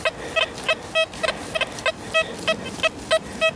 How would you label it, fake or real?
real